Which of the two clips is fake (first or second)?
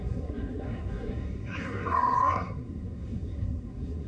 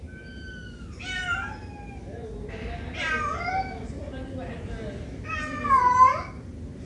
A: first